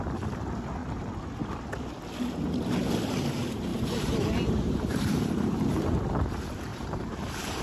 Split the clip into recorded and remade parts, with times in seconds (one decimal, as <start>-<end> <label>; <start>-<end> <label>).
0.0-3.7 recorded; 3.7-6.0 remade; 6.0-6.7 recorded; 6.7-7.6 remade